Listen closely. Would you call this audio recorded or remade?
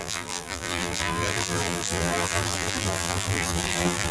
remade